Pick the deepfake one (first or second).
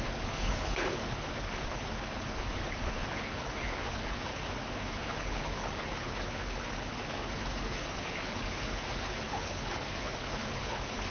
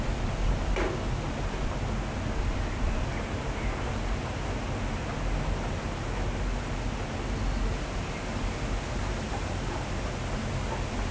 first